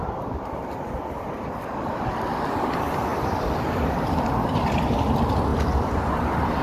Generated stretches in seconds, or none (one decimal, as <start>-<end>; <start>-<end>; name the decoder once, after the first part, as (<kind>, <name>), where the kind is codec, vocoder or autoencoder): none